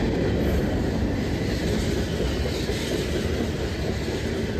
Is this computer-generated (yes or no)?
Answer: no